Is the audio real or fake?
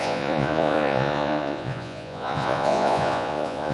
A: fake